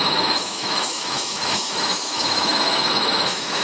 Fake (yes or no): yes